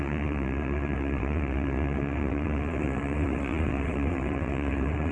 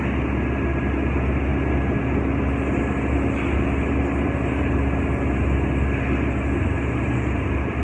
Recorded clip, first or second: second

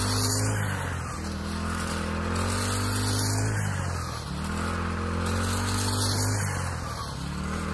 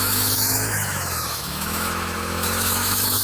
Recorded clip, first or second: first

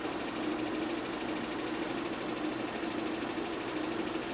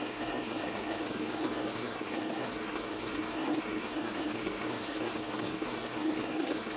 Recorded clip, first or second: first